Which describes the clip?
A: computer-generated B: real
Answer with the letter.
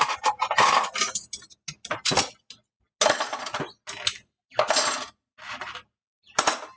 B